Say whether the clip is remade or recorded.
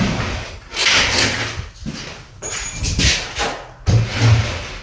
recorded